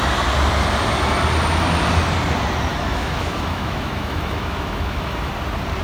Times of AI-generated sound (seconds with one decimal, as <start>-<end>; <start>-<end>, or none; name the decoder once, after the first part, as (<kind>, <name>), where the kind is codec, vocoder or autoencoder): 2.7-5.3 (autoencoder, DAC-VAE)